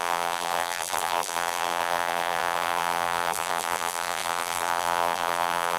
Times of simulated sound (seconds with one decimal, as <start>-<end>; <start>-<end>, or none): 0.0-5.8